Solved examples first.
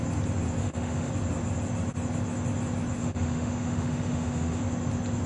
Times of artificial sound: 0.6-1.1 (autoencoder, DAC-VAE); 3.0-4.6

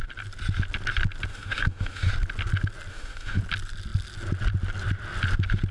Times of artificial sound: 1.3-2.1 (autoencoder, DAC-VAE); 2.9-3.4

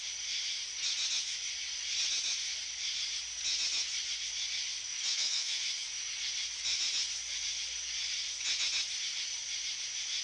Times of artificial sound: 4.8-5.6 (autoencoder, DAC-VAE)